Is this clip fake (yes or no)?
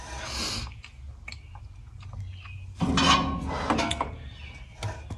no